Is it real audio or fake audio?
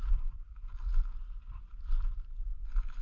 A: fake